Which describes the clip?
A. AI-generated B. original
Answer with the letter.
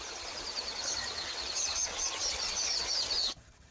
A